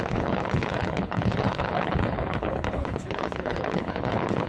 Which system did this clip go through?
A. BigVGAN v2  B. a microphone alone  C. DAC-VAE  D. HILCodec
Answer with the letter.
D